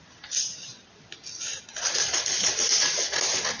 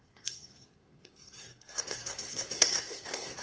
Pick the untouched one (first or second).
first